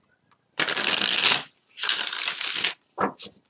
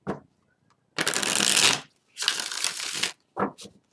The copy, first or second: first